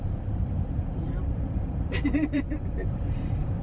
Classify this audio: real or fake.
fake